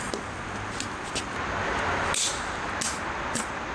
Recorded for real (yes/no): yes